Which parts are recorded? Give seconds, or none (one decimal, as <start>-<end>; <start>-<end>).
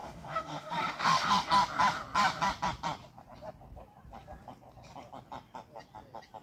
1.5-6.4